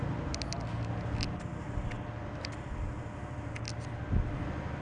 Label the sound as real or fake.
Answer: real